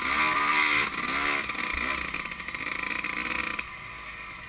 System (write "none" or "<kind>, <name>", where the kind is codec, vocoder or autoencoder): none